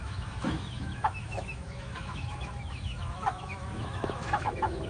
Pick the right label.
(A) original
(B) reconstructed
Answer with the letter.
B